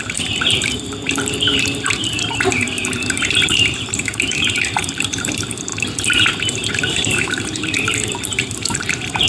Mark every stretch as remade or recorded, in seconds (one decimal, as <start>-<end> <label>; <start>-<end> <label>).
0.0-5.7 remade; 5.7-6.7 recorded; 6.7-9.3 remade